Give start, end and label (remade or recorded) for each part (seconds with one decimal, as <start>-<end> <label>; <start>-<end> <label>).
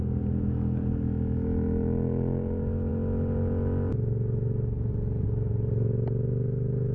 0.0-6.9 recorded